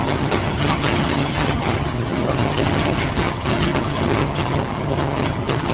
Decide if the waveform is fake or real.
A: fake